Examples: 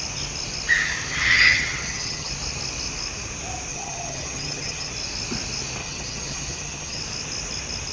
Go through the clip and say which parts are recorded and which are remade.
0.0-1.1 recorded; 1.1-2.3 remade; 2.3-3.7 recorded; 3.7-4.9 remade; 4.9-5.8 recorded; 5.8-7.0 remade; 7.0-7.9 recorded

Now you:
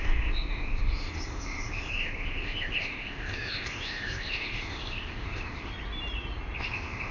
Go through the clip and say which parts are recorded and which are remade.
0.0-5.7 remade; 5.7-6.6 recorded; 6.6-7.1 remade